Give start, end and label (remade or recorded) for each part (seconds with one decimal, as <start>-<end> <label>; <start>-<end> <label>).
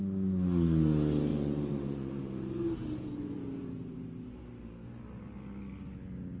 0.0-1.3 recorded; 1.3-2.2 remade; 2.2-2.8 recorded; 2.8-4.0 remade; 4.0-6.4 recorded